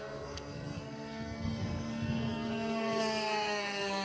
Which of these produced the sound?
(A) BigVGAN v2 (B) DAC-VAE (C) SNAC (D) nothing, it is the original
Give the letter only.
C